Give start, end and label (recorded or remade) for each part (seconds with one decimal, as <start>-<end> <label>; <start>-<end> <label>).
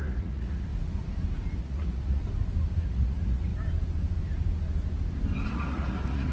0.0-0.7 remade; 0.7-1.6 recorded; 1.6-2.2 remade; 2.2-2.8 recorded; 2.8-3.5 remade; 3.5-5.5 recorded; 5.5-6.3 remade